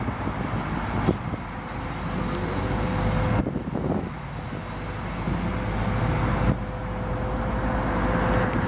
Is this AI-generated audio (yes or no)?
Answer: no